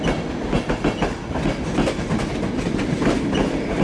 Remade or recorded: recorded